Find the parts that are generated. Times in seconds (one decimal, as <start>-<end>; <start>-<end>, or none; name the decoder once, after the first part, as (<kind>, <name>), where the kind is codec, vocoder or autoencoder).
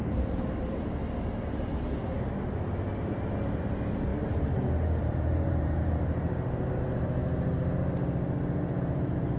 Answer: 0.0-1.0 (vocoder, BigVGAN v2); 3.6-4.1; 5.0-7.2; 8.8-9.4